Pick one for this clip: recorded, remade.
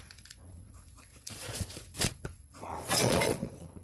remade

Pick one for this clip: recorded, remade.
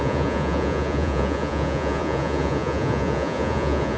remade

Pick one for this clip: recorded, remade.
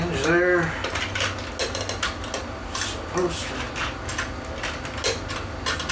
recorded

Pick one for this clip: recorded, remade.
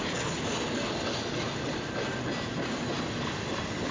recorded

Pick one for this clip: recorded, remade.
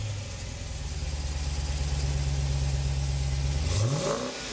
recorded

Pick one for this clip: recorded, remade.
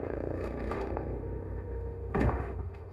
remade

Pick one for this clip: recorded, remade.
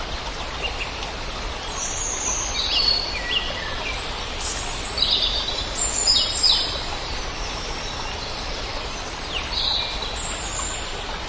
recorded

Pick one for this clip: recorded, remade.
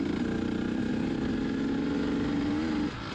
recorded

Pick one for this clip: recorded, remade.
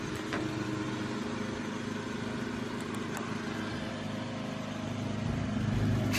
recorded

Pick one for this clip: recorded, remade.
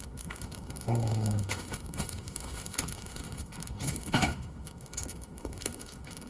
remade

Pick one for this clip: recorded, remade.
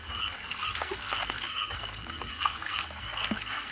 remade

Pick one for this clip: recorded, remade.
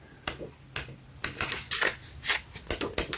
recorded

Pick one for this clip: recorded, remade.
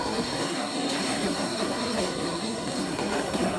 remade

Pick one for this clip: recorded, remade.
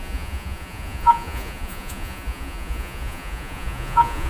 remade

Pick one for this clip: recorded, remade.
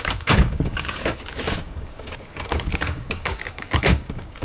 remade